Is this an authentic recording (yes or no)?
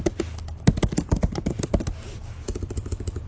yes